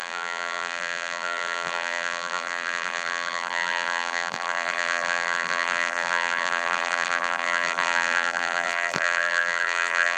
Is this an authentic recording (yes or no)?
no